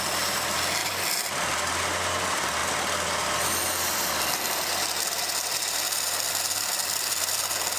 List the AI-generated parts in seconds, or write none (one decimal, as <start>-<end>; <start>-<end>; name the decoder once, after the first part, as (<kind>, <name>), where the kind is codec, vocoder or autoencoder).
none